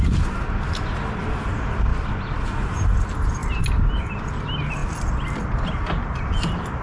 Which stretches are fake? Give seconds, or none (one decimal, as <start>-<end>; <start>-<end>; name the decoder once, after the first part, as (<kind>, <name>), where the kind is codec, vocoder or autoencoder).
none